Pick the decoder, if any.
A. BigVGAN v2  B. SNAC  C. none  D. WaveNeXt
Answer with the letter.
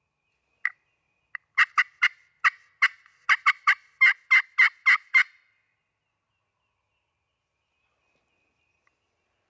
C